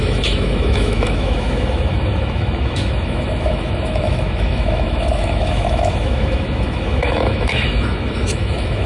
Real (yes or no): no